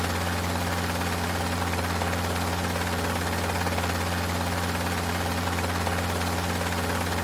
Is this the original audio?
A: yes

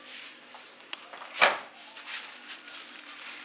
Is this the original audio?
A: no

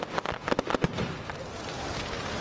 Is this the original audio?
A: yes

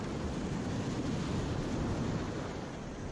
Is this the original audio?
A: yes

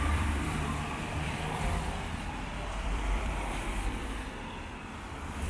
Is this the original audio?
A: no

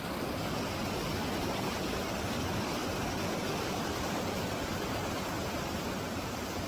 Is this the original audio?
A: yes